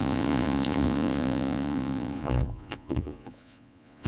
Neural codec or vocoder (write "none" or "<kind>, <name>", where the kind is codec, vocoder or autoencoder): vocoder, Vocos